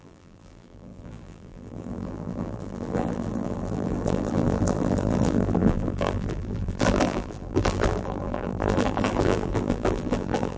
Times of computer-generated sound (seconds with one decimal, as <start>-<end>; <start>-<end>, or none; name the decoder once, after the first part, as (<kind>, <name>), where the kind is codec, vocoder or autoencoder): 0.0-10.6 (vocoder, BigVGAN v2)